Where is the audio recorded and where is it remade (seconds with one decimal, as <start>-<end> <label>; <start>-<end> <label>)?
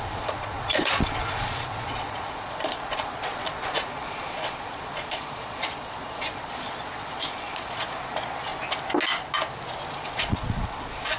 0.0-8.5 remade; 8.5-9.9 recorded; 9.9-11.2 remade